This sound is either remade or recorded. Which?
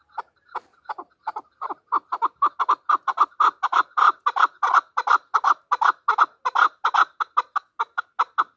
recorded